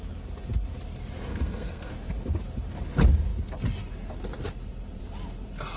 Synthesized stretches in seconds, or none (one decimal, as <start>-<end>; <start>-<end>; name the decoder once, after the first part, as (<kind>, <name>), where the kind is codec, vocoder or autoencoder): 1.3-1.9 (codec, SNAC)